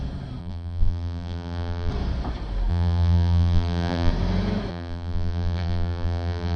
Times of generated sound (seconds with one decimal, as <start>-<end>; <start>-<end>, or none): 0.4-1.9; 2.7-4.1; 4.7-6.6

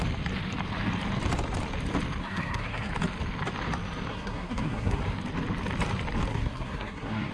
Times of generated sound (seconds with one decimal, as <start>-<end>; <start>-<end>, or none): 2.2-2.9; 4.1-5.0; 6.3-7.3

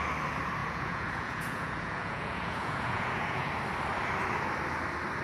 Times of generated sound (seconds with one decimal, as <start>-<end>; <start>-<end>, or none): 0.6-3.5

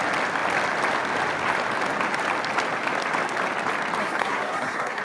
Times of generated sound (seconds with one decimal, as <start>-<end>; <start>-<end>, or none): 4.0-5.0

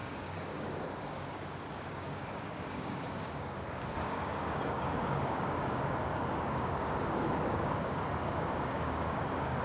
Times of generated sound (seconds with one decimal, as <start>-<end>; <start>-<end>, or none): 0.0-9.6

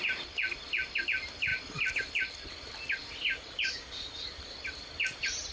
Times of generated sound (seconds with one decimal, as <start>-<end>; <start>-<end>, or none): none

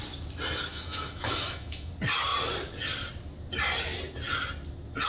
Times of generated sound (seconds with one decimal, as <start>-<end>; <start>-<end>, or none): 0.7-1.9